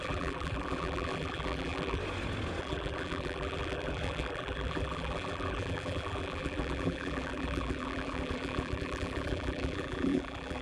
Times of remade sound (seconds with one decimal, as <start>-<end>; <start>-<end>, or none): 0.0-2.0; 2.6-10.6